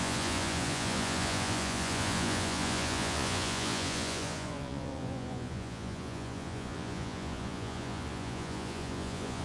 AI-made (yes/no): yes